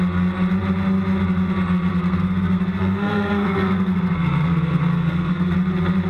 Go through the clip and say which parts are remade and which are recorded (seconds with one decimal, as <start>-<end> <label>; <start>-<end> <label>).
0.0-1.9 recorded; 1.9-5.5 remade; 5.5-6.1 recorded